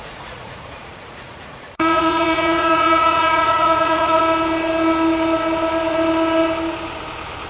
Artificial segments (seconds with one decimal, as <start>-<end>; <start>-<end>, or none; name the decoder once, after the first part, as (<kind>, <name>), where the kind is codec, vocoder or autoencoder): 0.0-4.2 (vocoder, Vocos)